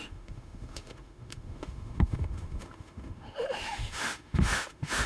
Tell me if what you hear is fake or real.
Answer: fake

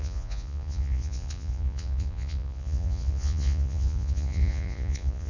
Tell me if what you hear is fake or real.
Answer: fake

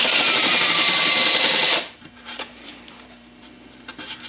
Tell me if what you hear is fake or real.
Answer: fake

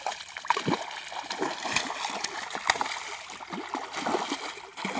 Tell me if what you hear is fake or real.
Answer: real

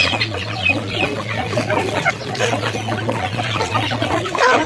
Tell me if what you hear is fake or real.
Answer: fake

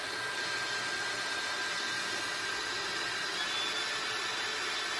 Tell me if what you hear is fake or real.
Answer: real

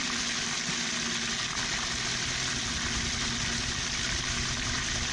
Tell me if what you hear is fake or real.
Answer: real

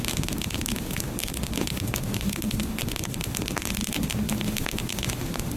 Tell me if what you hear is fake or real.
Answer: fake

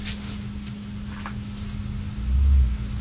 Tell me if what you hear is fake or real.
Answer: real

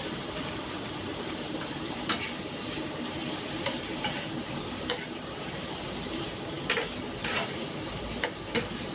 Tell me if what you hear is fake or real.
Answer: fake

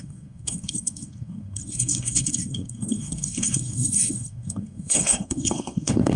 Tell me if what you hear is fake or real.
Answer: fake